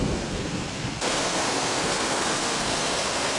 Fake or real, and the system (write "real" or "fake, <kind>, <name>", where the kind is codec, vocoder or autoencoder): fake, codec, SNAC